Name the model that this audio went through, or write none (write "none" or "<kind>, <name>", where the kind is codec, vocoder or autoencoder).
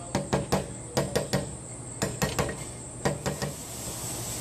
none